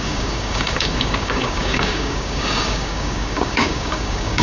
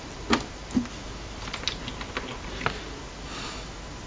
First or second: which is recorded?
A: second